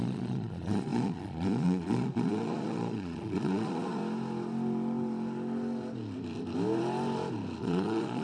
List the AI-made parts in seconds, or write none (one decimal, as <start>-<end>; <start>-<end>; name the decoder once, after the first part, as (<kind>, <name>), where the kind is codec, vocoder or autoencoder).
0.0-4.0 (vocoder, Vocos); 7.6-8.2